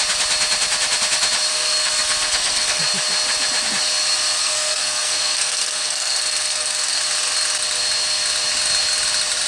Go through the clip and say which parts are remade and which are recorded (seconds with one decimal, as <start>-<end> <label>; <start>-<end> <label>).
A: 0.0-1.5 recorded; 1.5-2.8 remade; 2.8-4.4 recorded; 4.4-7.0 remade; 7.0-9.5 recorded